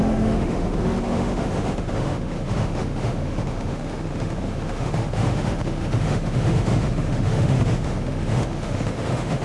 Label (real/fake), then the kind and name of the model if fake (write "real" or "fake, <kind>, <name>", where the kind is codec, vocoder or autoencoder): fake, autoencoder, DAC-VAE